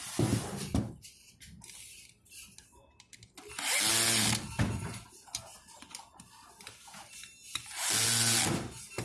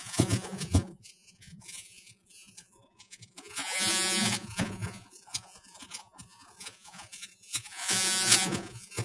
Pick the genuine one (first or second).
first